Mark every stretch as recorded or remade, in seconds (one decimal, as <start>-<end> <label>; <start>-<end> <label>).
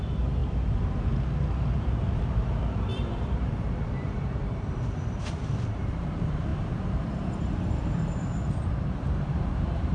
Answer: 0.0-0.4 remade; 0.4-1.8 recorded; 1.8-9.9 remade